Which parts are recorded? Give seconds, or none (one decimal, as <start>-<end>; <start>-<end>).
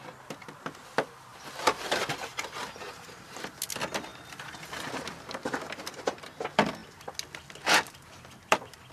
0.0-1.3; 2.0-2.6; 3.6-4.1; 4.7-8.9